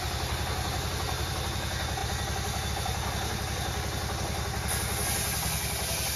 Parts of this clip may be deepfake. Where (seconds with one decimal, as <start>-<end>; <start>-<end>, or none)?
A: none

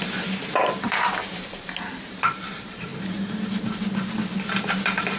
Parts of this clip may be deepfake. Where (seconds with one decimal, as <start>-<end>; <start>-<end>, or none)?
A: 0.0-2.9; 4.7-5.2

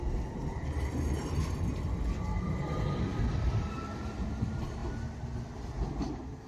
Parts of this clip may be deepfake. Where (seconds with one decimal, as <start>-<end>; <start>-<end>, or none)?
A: none